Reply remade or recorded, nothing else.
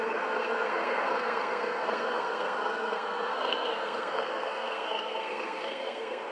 remade